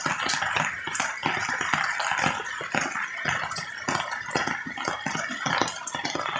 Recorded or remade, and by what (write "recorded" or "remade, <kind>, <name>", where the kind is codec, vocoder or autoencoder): recorded